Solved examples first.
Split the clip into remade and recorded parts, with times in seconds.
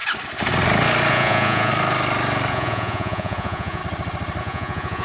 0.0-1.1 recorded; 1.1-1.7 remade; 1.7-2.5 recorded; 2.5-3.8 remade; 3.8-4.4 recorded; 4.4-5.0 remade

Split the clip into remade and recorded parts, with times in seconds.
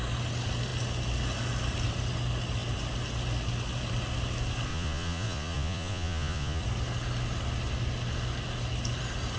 0.0-4.7 recorded; 4.7-6.6 remade; 6.6-9.4 recorded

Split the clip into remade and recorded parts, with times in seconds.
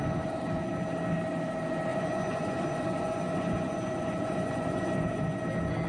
0.0-1.9 recorded; 1.9-5.4 remade; 5.4-5.9 recorded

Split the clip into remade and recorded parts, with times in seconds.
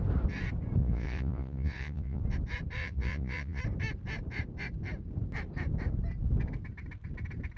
0.0-0.8 recorded; 0.8-2.2 remade; 2.2-2.8 recorded; 2.8-3.6 remade; 3.6-7.6 recorded